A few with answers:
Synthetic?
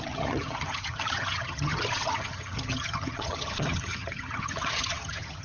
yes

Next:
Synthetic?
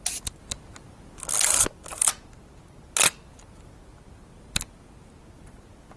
no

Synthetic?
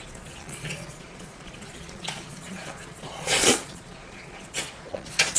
yes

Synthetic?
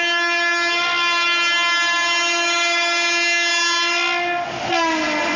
no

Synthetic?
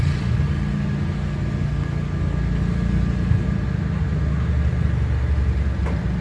no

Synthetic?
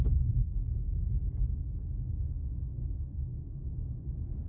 no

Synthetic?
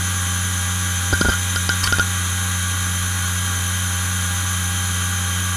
no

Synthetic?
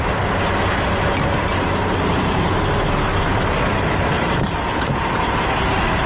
no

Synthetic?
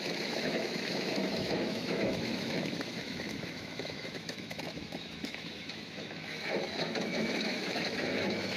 yes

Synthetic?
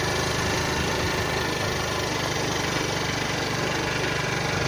no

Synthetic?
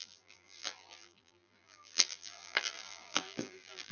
yes